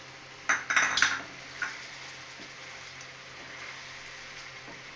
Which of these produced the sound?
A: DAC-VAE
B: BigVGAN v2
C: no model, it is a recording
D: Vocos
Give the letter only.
C